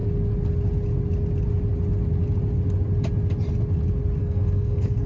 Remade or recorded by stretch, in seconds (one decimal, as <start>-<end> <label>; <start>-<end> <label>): 0.0-4.2 recorded; 4.2-5.1 remade